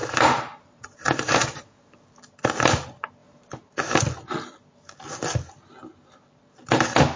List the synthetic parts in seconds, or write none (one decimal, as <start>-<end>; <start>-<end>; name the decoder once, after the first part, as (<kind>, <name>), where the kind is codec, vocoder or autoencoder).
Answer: 0.0-2.1 (vocoder, BigVGAN v2); 3.2-4.0